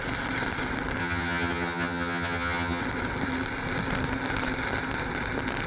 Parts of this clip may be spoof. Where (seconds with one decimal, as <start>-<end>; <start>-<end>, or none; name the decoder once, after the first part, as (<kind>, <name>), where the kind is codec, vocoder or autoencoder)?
1.0-2.8 (vocoder, HiFi-GAN)

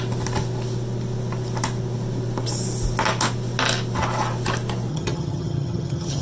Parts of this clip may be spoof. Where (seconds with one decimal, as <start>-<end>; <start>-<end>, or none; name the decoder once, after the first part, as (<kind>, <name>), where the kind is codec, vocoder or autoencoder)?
4.9-6.2 (vocoder, HiFi-GAN)

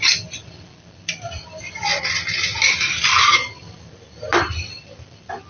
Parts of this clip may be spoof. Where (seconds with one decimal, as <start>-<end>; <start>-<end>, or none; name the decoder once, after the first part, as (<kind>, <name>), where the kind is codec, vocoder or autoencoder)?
none

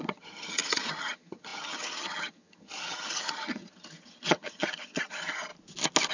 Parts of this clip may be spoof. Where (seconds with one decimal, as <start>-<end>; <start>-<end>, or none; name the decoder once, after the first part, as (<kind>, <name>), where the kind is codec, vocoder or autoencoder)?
0.0-5.5 (vocoder, HiFi-GAN)

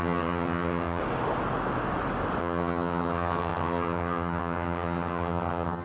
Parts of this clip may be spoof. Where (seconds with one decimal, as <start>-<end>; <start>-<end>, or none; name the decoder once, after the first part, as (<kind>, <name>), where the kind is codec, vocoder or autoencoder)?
0.0-1.0 (vocoder, HiFi-GAN); 2.4-5.8

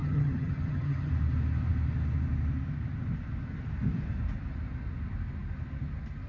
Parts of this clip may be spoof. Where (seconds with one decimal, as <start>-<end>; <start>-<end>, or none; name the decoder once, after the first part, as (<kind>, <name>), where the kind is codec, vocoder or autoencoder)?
0.0-1.1 (vocoder, HiFi-GAN)

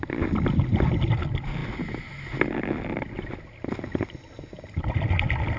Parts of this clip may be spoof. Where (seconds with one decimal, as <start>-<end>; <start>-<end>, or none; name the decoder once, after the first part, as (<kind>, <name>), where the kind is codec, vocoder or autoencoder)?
none

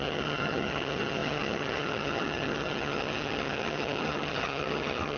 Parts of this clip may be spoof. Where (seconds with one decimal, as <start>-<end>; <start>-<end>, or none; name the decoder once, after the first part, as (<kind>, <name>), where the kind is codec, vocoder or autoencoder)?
0.0-5.2 (vocoder, HiFi-GAN)